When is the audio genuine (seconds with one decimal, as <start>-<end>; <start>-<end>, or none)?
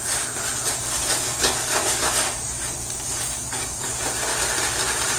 0.0-0.8; 3.9-5.2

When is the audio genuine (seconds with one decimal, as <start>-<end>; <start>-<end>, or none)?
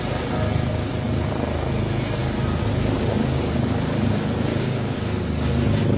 0.0-4.5; 5.0-6.0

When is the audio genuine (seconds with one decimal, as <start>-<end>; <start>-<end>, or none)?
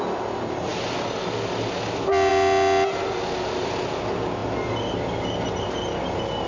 0.0-6.5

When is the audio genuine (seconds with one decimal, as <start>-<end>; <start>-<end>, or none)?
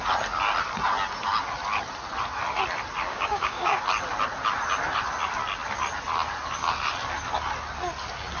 0.0-3.1; 3.8-8.4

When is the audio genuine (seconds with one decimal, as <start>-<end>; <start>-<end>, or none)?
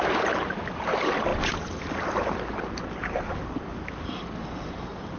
0.0-5.2